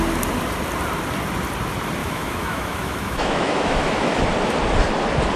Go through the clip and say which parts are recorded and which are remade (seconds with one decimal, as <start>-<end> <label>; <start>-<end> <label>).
0.0-2.0 recorded; 2.0-4.2 remade; 4.2-5.4 recorded